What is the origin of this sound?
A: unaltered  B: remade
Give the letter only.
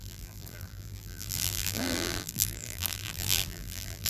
B